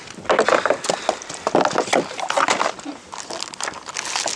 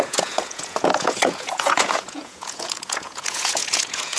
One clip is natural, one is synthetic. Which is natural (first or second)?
first